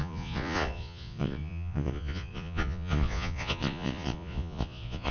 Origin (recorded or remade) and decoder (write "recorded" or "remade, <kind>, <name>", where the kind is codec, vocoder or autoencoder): remade, vocoder, Vocos